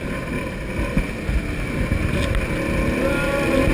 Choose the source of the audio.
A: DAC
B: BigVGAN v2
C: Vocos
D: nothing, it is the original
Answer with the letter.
D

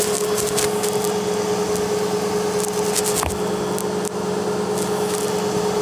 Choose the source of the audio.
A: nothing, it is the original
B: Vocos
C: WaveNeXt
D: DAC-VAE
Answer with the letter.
A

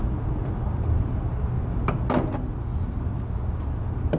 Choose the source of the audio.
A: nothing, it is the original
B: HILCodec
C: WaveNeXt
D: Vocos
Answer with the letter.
A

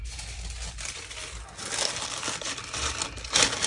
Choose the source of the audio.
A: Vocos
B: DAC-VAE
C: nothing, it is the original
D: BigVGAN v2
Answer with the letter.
C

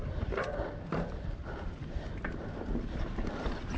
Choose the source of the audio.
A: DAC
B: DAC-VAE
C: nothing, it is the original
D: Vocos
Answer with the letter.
C